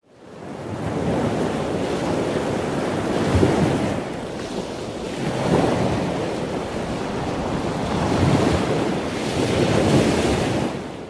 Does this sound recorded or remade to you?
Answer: recorded